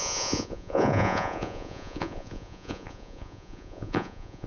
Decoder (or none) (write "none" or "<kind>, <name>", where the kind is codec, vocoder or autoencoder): vocoder, Vocos